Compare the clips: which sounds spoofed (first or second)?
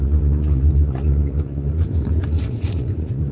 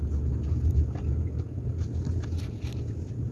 first